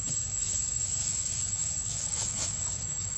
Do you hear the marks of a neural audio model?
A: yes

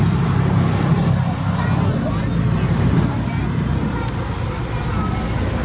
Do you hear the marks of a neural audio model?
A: no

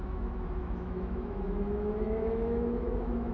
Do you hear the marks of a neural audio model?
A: yes